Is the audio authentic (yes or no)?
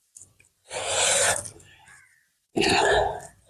yes